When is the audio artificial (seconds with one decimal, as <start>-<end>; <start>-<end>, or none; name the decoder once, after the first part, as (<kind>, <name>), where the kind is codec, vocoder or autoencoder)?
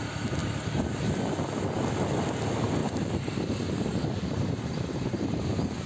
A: 2.8-3.4 (vocoder, BigVGAN v2); 3.9-5.3